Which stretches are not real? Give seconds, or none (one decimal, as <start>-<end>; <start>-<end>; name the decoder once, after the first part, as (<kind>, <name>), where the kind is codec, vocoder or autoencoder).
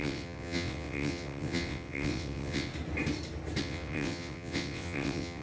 0.0-2.7 (vocoder, WaveNeXt); 3.6-5.4